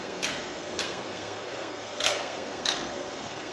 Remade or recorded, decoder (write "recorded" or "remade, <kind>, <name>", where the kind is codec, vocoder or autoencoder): remade, codec, SNAC